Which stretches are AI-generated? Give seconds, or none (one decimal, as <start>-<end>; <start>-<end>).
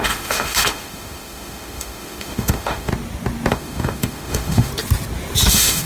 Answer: 0.0-2.9; 3.5-4.7; 5.5-5.9